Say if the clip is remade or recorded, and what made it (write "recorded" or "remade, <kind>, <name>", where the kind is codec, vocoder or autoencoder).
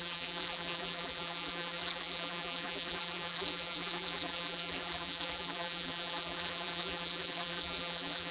remade, vocoder, BigVGAN v2